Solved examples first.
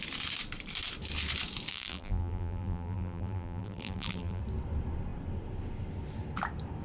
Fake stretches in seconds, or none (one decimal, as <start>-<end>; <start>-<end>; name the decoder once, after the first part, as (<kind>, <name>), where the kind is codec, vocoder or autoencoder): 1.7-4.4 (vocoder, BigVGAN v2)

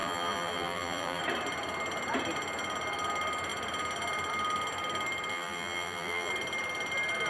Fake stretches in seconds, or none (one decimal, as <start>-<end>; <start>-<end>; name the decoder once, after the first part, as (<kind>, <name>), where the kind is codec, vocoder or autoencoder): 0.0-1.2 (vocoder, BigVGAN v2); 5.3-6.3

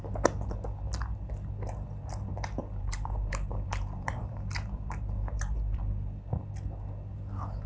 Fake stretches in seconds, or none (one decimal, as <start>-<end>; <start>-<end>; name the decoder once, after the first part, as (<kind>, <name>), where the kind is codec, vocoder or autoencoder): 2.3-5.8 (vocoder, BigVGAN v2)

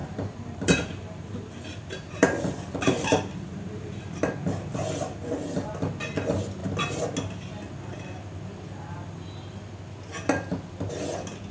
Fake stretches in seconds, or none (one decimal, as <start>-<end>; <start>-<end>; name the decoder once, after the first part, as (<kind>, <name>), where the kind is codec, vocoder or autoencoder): 0.0-4.2 (vocoder, BigVGAN v2)